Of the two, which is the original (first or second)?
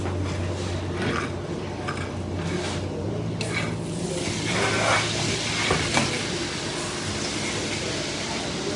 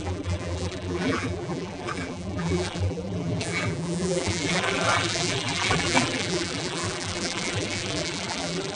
first